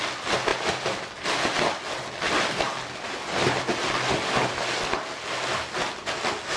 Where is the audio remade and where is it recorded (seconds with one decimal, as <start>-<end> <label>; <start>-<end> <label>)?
0.0-6.6 recorded